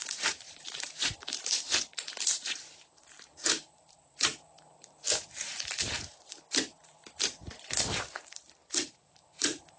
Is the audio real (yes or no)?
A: no